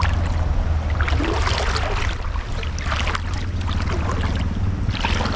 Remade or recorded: recorded